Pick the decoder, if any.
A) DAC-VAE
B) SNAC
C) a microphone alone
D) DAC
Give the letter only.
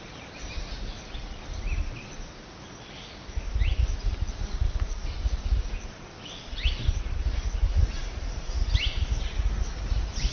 C